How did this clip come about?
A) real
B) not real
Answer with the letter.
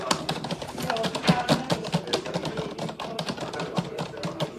A